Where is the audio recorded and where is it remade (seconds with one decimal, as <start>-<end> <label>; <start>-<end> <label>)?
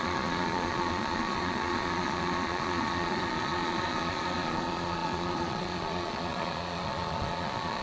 0.0-7.8 remade